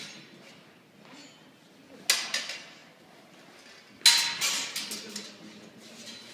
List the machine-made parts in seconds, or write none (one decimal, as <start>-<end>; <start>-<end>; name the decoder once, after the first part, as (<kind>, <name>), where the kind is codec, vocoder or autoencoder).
none